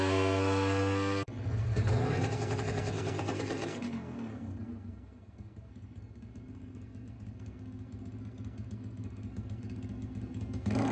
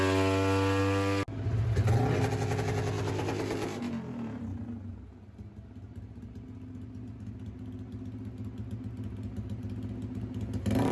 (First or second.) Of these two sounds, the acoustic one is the second